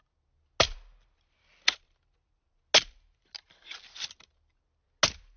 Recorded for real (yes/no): yes